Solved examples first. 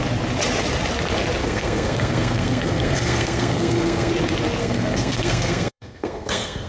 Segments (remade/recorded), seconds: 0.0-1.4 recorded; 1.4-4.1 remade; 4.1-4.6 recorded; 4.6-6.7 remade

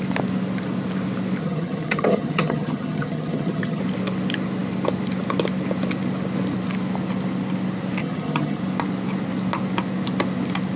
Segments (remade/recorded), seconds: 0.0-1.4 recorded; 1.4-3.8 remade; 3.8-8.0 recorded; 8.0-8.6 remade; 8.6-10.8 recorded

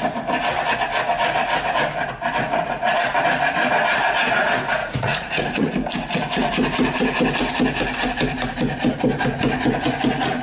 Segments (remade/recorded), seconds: 0.0-4.8 recorded; 4.8-5.7 remade; 5.7-10.4 recorded

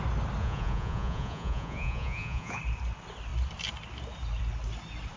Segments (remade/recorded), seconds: 0.0-0.4 recorded; 0.4-2.6 remade; 2.6-5.2 recorded

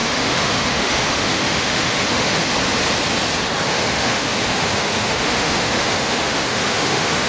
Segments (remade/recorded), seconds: 0.0-2.4 remade; 2.4-3.7 recorded; 3.7-7.3 remade

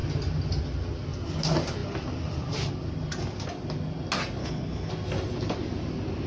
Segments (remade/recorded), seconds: 0.0-4.4 recorded; 4.4-4.9 remade; 4.9-6.3 recorded

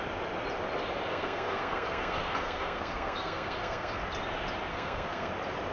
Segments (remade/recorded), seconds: 0.0-1.1 recorded; 1.1-4.0 remade; 4.0-4.7 recorded; 4.7-5.3 remade; 5.3-5.7 recorded

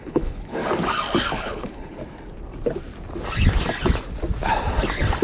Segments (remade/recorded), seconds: 0.0-0.6 remade; 0.6-1.3 recorded; 1.3-2.0 remade; 2.0-5.2 recorded